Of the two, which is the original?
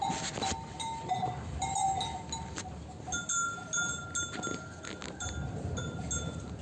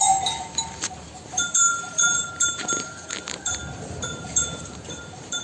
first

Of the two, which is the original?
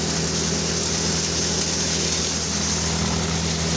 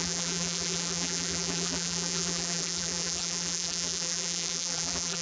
first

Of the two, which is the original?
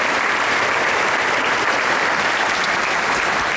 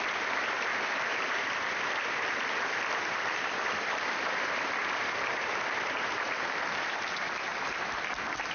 first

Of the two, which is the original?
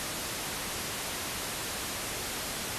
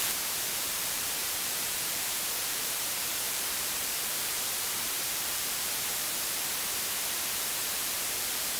first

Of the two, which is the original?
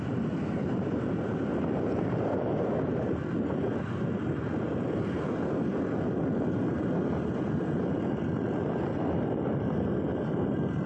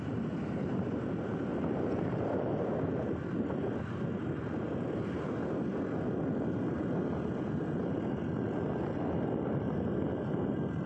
second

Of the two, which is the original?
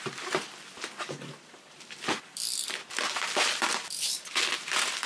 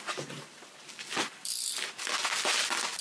second